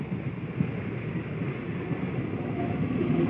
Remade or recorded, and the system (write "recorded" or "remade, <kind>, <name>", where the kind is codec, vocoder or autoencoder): recorded